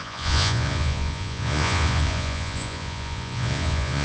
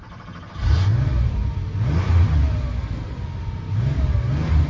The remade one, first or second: first